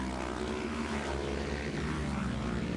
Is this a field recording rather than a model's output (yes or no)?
yes